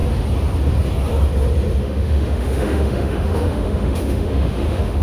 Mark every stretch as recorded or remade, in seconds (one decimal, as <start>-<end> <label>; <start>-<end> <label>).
0.0-1.8 recorded; 1.8-5.0 remade